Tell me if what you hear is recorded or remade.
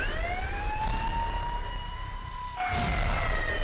recorded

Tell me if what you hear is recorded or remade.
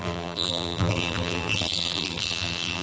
remade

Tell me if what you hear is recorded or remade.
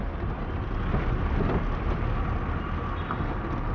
recorded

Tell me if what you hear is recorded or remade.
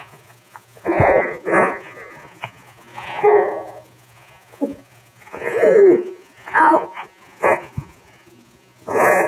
remade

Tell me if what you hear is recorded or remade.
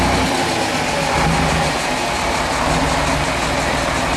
recorded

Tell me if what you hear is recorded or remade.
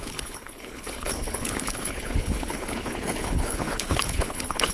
remade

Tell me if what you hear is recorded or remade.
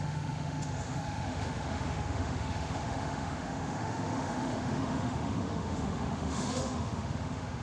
remade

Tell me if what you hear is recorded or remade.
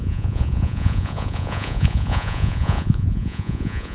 remade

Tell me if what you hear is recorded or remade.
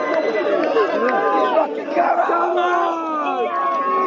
recorded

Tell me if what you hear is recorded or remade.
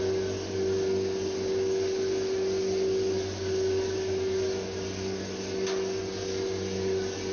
recorded